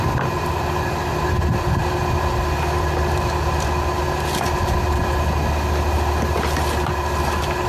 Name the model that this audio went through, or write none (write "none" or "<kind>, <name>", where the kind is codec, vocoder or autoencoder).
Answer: none